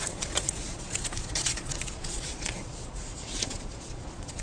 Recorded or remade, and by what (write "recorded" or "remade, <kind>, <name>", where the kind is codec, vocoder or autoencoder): remade, vocoder, Vocos